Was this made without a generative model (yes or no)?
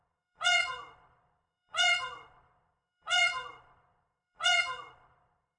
no